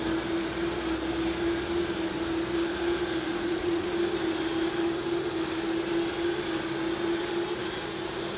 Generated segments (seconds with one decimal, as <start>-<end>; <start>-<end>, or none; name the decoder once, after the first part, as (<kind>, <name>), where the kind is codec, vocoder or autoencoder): 3.3-3.9 (vocoder, Vocos)